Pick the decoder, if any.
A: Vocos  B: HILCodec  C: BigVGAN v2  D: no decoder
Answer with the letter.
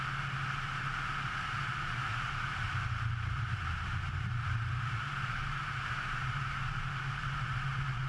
C